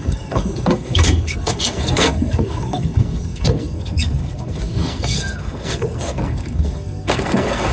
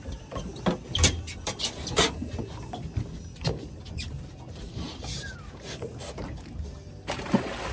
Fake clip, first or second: first